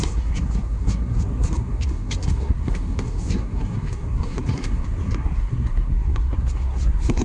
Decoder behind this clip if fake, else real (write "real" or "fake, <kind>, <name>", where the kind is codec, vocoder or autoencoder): fake, codec, SNAC